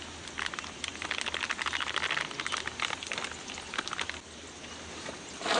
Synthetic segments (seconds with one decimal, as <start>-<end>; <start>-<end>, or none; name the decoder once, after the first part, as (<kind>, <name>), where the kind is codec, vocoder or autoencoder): none